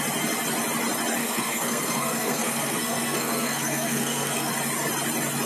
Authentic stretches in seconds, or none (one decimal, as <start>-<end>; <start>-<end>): 0.0-1.2; 4.5-5.5